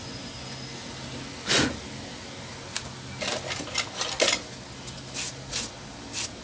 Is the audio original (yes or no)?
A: yes